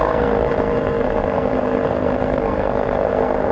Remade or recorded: remade